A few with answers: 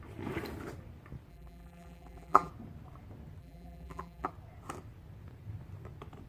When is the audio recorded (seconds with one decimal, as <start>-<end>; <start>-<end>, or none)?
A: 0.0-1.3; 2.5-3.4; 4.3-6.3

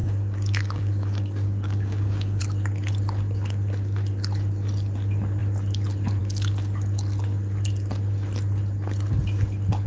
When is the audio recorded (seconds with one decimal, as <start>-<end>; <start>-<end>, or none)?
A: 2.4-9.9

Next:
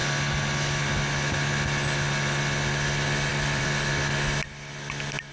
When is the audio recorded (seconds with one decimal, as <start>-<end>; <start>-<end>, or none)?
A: 0.0-3.3; 3.9-5.3

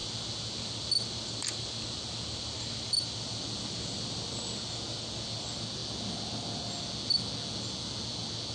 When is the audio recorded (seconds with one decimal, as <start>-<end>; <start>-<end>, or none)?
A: 0.0-8.5

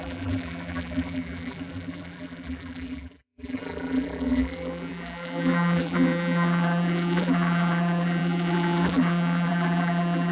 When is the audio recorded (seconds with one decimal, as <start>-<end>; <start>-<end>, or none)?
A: none